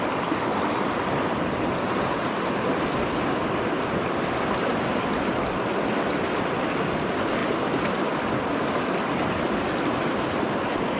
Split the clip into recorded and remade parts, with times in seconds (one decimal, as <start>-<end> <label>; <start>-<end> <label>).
0.0-11.0 recorded